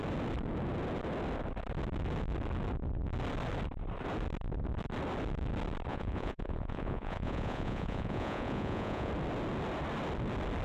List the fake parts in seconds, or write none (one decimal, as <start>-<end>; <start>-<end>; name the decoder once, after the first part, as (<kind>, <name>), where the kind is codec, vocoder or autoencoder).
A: 5.9-9.1 (vocoder, Vocos)